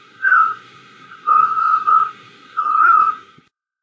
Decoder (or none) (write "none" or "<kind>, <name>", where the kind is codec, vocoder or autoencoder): codec, SNAC